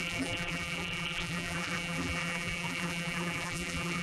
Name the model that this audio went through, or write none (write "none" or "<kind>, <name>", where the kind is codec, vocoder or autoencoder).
vocoder, BigVGAN v2